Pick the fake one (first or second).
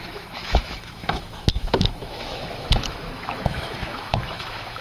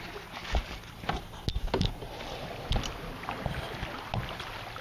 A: first